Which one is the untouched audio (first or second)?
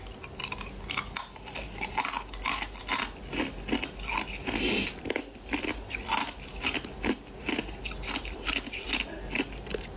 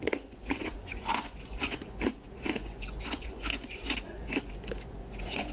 first